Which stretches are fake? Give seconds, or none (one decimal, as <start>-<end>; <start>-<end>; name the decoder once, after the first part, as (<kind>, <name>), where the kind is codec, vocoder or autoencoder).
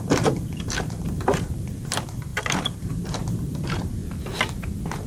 0.0-4.0 (vocoder, BigVGAN v2)